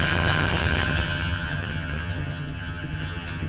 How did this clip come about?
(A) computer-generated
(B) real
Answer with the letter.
A